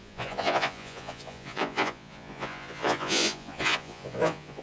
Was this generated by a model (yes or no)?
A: yes